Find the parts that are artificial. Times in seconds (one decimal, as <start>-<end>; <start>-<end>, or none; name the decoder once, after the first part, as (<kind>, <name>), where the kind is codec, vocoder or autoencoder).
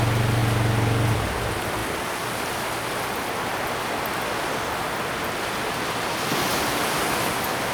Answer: none